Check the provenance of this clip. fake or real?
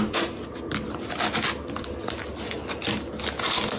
real